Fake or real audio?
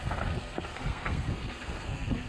fake